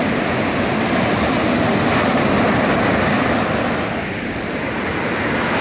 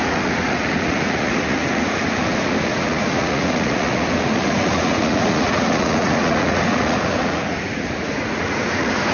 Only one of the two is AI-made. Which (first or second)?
second